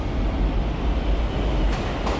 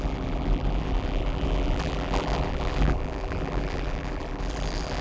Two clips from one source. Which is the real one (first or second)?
first